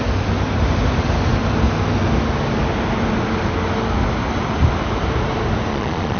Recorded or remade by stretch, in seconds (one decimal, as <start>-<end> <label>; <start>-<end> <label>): 0.0-5.7 recorded; 5.7-6.2 remade

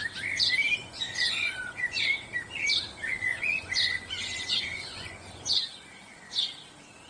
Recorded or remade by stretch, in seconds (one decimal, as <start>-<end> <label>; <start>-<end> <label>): 0.0-0.8 recorded; 0.8-2.3 remade; 2.3-3.1 recorded; 3.1-6.5 remade; 6.5-7.1 recorded

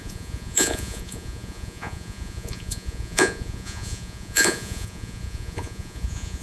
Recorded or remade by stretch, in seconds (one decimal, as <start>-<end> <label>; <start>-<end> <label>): 0.0-6.4 remade

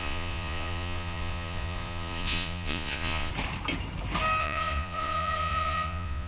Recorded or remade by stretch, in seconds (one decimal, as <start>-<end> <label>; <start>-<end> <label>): 0.0-3.3 remade; 3.3-4.4 recorded; 4.4-6.3 remade

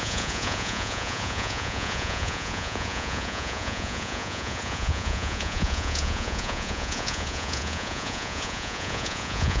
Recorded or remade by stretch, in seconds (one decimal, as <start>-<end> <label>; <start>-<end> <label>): 0.0-9.6 remade

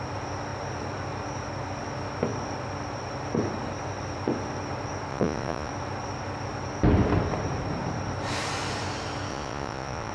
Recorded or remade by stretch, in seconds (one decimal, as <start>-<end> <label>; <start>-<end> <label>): 0.0-5.1 recorded; 5.1-5.7 remade; 5.7-9.3 recorded; 9.3-10.1 remade

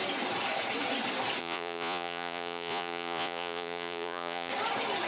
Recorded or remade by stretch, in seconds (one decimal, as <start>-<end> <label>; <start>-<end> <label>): 0.0-1.4 recorded; 1.4-4.5 remade; 4.5-5.1 recorded

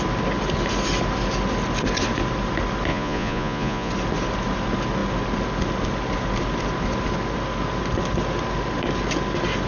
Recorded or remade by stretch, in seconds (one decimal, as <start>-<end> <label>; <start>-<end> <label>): 0.0-2.9 recorded; 2.9-3.9 remade; 3.9-9.7 recorded